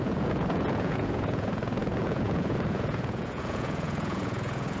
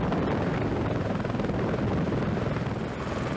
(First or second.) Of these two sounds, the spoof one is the first